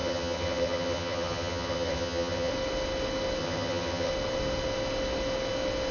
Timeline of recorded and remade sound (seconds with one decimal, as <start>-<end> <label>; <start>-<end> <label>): 0.0-2.5 remade; 2.5-3.4 recorded; 3.4-4.1 remade; 4.1-5.9 recorded